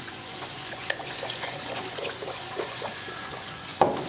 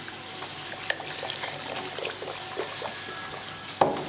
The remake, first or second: first